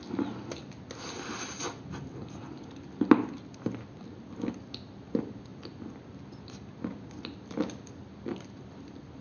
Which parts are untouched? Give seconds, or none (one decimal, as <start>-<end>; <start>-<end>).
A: 0.0-9.2